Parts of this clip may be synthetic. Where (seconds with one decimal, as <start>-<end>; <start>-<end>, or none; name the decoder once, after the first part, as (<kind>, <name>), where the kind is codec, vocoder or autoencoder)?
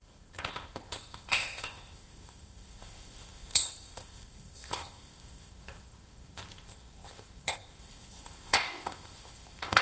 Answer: 0.0-9.8 (codec, ZipCodec)